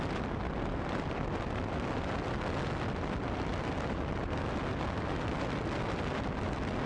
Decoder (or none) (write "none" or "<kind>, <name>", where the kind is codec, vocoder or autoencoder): none